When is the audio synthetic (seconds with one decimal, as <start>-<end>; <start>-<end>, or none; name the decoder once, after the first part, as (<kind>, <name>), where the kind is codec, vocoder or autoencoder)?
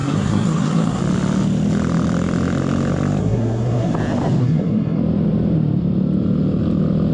0.0-1.0 (codec, SNAC); 3.2-3.9; 4.4-5.0